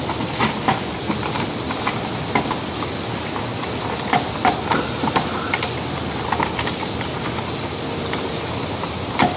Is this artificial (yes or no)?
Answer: no